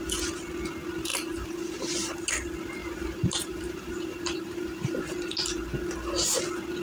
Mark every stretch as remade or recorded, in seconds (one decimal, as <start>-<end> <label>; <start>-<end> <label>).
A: 0.0-1.1 recorded; 1.1-2.2 remade; 2.2-2.8 recorded; 2.8-5.2 remade; 5.2-6.8 recorded